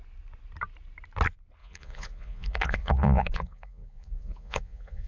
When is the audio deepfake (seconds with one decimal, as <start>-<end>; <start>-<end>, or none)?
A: 1.6-5.1